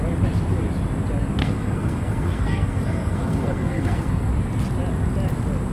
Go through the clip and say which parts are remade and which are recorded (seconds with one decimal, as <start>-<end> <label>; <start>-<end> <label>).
0.0-1.4 recorded; 1.4-4.3 remade; 4.3-5.7 recorded